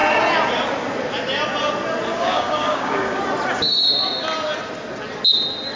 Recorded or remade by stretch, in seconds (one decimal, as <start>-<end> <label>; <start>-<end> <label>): 0.0-2.1 recorded; 2.1-3.2 remade; 3.2-5.8 recorded